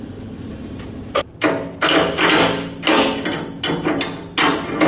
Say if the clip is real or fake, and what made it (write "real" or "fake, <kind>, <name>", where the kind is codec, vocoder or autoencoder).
real